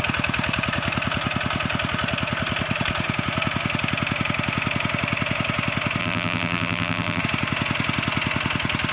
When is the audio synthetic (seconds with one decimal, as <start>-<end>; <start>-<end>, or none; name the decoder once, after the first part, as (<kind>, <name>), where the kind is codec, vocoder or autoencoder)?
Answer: 6.0-7.2 (vocoder, BigVGAN v2)